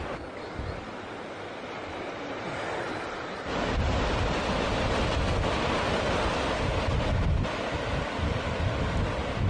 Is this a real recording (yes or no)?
yes